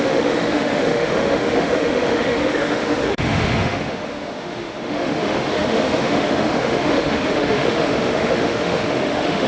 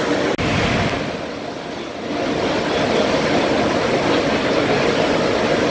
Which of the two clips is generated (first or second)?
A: first